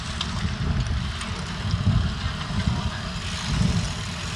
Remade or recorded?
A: recorded